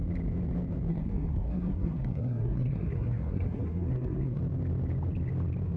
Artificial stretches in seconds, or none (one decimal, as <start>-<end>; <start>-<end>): 0.9-4.4